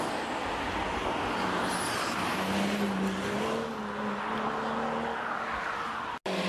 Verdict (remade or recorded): recorded